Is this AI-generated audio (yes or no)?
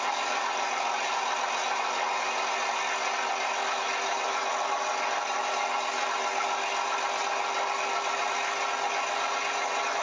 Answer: no